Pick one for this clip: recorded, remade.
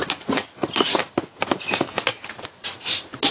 recorded